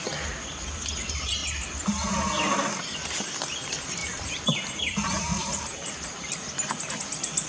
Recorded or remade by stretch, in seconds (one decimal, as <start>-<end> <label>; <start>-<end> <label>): 0.0-4.0 recorded; 4.0-4.8 remade; 4.8-5.7 recorded; 5.7-6.3 remade; 6.3-7.5 recorded

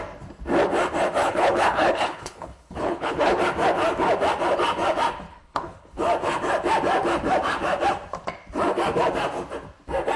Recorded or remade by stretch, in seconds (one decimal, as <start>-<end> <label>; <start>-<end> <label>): 0.0-1.2 recorded; 1.2-3.4 remade; 3.4-5.3 recorded; 5.3-6.0 remade; 6.0-10.2 recorded

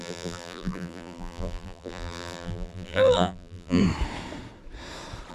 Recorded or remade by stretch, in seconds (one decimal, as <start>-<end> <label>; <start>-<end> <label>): 0.0-3.8 remade; 3.8-5.3 recorded

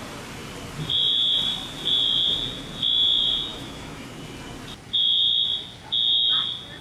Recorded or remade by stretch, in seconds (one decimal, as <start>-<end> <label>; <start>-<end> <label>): 0.0-3.5 recorded; 3.5-4.1 remade; 4.1-6.8 recorded